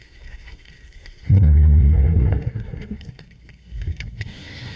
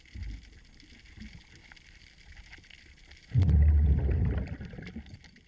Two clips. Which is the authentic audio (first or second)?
second